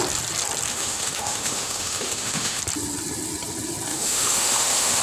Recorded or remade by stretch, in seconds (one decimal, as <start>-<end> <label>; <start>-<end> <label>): 0.0-0.7 recorded; 0.7-2.6 remade; 2.6-3.9 recorded; 3.9-5.0 remade